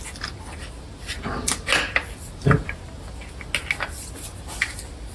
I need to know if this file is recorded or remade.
recorded